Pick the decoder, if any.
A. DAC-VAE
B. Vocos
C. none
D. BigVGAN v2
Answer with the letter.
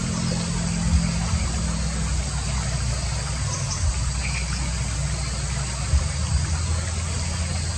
C